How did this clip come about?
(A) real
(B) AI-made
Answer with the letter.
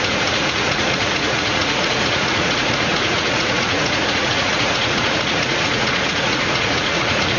B